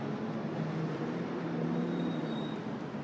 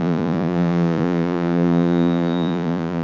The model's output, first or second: second